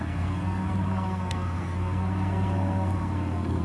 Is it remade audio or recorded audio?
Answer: remade